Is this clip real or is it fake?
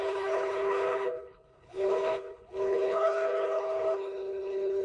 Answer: fake